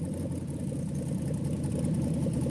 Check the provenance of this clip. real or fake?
real